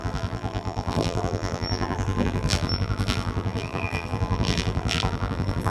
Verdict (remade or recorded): remade